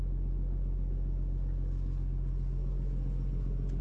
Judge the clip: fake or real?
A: real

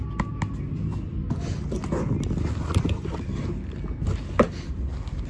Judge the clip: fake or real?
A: real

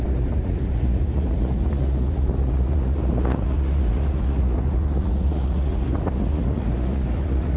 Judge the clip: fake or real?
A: fake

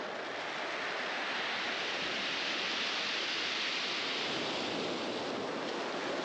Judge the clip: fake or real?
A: real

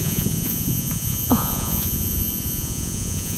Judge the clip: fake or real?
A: fake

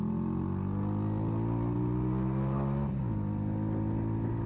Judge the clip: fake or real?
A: real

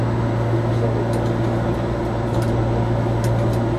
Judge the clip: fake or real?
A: real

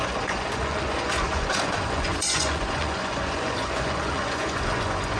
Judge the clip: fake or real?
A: fake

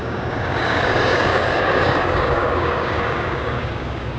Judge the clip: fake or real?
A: fake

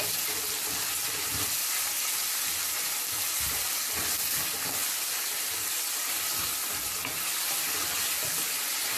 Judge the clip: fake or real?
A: real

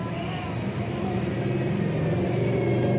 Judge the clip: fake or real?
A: real